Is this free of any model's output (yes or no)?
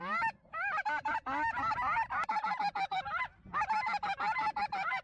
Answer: yes